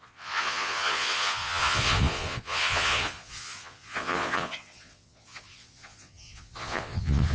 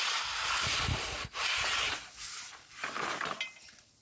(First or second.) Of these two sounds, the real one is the second